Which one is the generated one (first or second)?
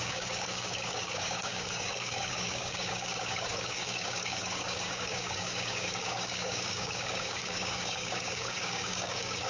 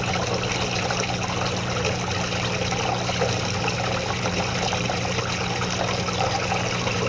first